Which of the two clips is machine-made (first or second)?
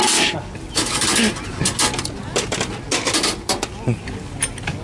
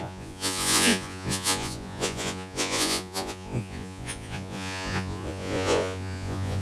second